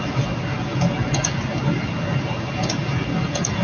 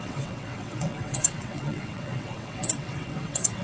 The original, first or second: first